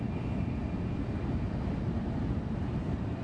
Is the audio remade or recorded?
recorded